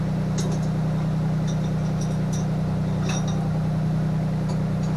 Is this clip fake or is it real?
real